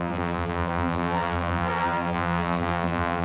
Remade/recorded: remade